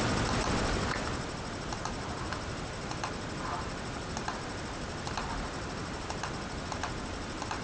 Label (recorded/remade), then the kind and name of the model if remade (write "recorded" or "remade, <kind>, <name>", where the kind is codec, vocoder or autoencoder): recorded